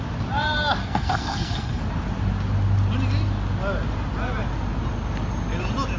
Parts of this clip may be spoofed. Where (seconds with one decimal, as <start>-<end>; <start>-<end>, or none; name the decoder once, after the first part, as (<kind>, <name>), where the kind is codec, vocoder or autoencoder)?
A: 0.8-1.8 (codec, SNAC)